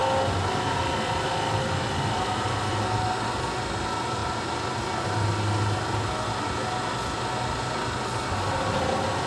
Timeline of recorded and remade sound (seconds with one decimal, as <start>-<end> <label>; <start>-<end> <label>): 0.0-9.3 recorded